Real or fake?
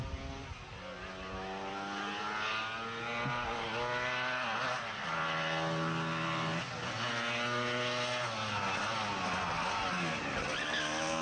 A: real